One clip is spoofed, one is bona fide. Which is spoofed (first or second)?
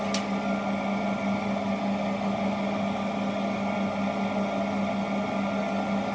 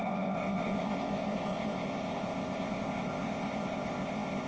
second